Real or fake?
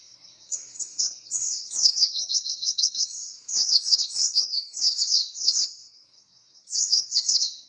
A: fake